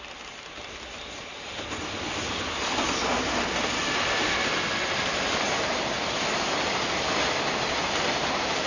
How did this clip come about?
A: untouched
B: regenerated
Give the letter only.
A